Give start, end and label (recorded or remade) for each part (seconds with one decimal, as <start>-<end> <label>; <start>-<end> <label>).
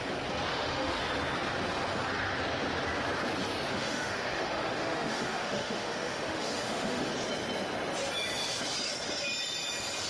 0.0-0.5 recorded; 0.5-1.0 remade; 1.0-3.7 recorded; 3.7-7.1 remade; 7.1-10.1 recorded